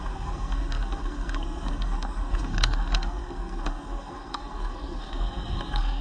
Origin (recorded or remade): remade